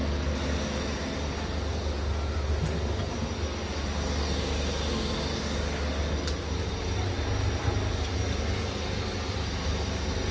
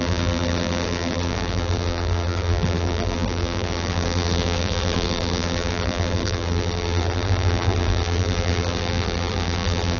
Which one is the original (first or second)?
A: first